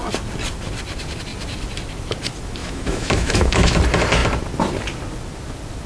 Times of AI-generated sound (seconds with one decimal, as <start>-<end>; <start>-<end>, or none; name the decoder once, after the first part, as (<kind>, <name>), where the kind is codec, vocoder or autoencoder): 2.6-3.8 (autoencoder, DAC-VAE)

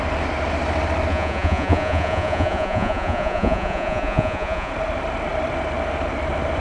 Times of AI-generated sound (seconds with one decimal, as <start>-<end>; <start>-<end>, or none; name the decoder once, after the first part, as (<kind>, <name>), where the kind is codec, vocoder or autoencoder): 1.1-4.7 (vocoder, Vocos)

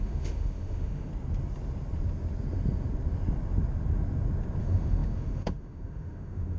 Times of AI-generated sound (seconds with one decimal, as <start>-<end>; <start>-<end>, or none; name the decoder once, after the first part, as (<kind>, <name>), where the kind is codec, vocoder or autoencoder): 0.0-1.1 (autoencoder, DAC-VAE); 4.6-6.6